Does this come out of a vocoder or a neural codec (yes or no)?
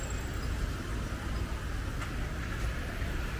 no